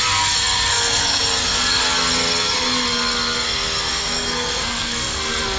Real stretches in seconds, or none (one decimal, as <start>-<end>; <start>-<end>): 0.0-0.7; 1.2-3.9